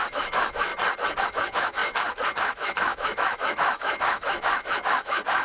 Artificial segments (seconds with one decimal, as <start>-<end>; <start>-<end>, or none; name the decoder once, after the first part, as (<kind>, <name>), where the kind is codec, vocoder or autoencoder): 0.0-0.7 (autoencoder, DAC-VAE); 1.2-5.4